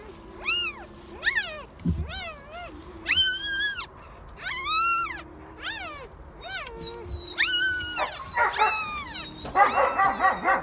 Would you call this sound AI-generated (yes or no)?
no